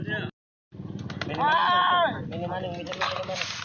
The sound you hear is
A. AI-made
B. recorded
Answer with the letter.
B